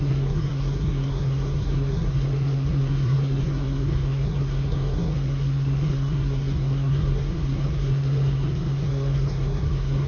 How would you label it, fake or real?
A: fake